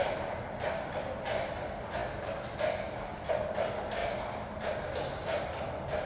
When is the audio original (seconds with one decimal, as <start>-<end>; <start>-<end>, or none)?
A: 0.0-6.1